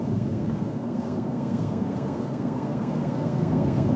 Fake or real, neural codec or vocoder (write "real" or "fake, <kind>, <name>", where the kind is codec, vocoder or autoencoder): fake, codec, SNAC